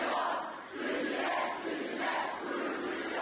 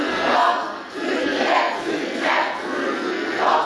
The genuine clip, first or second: first